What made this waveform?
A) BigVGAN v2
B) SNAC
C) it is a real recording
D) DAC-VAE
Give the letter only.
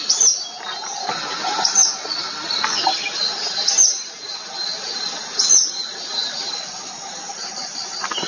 C